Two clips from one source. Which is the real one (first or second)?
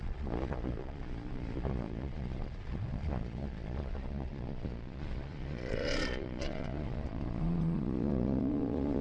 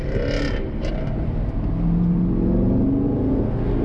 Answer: second